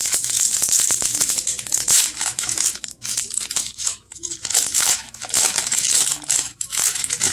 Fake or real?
fake